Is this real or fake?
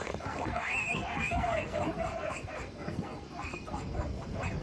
fake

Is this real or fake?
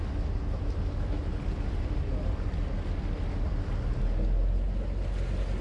real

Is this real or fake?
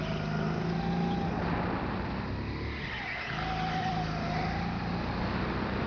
real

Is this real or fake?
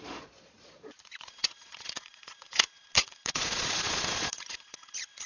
fake